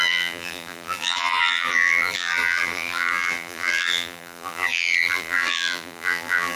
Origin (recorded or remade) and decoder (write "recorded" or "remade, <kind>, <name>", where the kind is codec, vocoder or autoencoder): remade, vocoder, BigVGAN v2